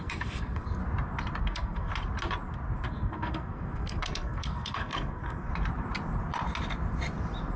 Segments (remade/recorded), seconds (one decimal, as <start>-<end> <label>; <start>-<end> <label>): 0.0-0.8 remade; 0.8-1.4 recorded; 1.4-1.9 remade; 1.9-2.9 recorded; 2.9-5.5 remade; 5.5-7.6 recorded